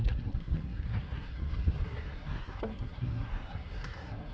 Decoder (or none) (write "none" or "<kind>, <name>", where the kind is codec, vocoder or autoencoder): codec, SNAC